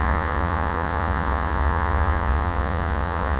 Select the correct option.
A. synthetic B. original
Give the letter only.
A